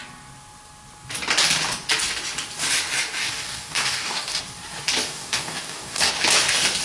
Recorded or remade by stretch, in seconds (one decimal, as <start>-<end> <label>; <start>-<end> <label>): 0.0-3.2 recorded; 3.2-4.4 remade; 4.4-5.0 recorded; 5.0-6.1 remade; 6.1-6.8 recorded